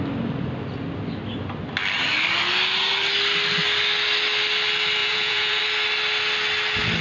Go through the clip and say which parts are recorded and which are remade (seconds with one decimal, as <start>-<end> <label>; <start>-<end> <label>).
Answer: 0.0-5.0 recorded; 5.0-5.6 remade; 5.6-7.0 recorded